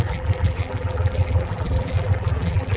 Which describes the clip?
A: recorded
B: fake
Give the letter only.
B